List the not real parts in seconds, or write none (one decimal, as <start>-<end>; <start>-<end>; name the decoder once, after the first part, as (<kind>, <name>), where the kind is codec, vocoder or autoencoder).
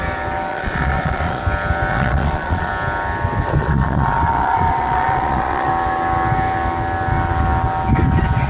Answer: 0.5-1.4 (vocoder, Vocos); 1.9-2.7; 3.6-5.7